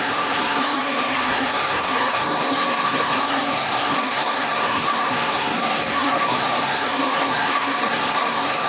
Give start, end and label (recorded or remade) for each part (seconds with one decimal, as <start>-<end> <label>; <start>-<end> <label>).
0.0-8.7 remade